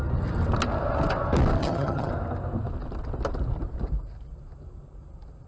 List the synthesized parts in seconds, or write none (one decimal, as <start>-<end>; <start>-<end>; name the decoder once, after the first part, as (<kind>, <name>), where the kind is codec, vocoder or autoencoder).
1.6-2.1 (vocoder, HiFi-GAN)